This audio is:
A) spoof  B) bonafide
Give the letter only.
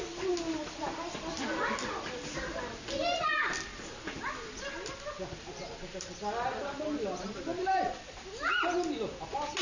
B